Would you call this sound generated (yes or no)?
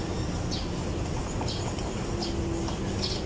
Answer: no